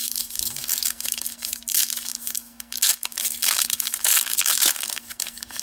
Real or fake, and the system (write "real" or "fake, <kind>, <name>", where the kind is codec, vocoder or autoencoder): fake, codec, SNAC